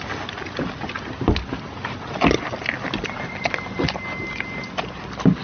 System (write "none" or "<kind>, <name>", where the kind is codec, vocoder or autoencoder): none